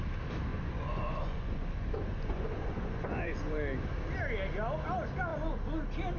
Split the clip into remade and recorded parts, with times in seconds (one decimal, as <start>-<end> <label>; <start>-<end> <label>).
0.0-0.5 recorded; 0.5-3.4 remade; 3.4-6.2 recorded